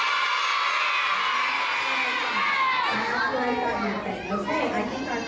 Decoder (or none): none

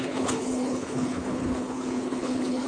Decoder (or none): codec, HILCodec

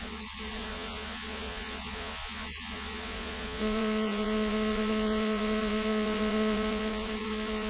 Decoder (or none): vocoder, Vocos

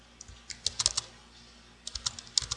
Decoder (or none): none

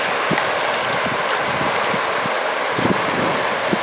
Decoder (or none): none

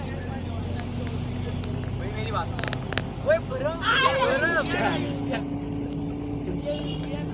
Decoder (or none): none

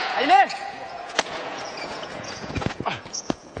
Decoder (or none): vocoder, Vocos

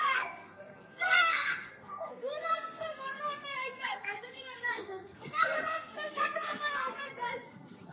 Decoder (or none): codec, SNAC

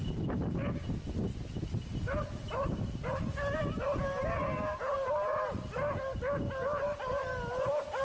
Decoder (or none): none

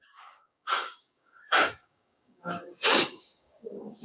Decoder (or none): codec, DAC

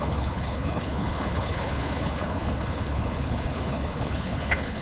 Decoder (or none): codec, HILCodec